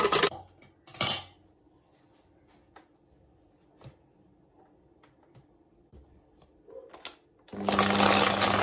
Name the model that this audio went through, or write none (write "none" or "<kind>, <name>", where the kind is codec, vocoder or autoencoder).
none